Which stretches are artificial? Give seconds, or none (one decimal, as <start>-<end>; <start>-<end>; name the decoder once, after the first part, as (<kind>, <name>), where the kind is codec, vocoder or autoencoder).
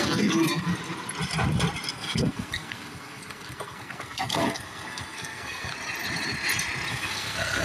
0.0-0.7 (codec, SNAC); 1.9-5.7; 6.9-7.6